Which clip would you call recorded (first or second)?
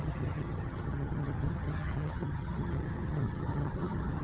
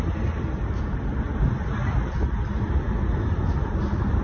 second